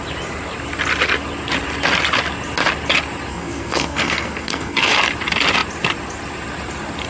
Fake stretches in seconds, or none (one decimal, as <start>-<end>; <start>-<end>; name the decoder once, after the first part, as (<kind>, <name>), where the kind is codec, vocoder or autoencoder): 3.3-4.9 (codec, SNAC)

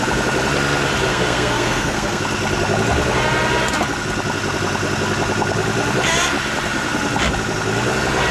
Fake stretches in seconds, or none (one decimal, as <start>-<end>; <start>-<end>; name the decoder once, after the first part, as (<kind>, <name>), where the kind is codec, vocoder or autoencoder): 1.1-2.2 (codec, SNAC)

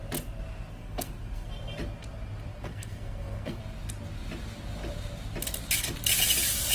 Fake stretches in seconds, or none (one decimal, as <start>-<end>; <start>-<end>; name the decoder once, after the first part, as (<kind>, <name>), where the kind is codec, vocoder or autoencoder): 0.7-1.5 (codec, SNAC); 2.5-3.6

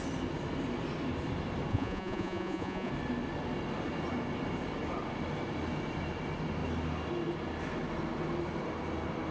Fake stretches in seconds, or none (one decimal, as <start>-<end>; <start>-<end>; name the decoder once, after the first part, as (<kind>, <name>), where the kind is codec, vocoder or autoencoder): 1.7-2.9 (vocoder, Vocos)

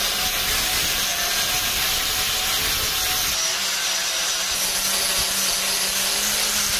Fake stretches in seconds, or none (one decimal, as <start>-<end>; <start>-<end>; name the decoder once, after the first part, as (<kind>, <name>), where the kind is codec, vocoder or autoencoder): none